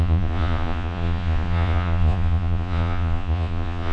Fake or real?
fake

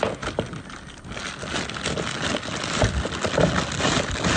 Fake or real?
real